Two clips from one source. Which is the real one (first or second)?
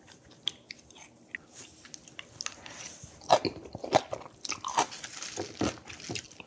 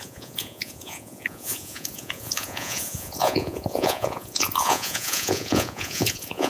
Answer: first